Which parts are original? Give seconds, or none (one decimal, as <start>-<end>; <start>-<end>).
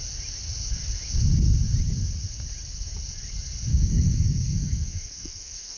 0.0-3.7